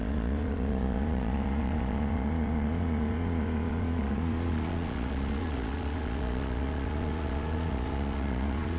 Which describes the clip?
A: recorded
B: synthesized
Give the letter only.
B